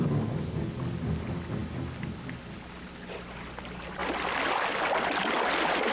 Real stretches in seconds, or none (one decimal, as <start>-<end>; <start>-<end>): 0.0-5.9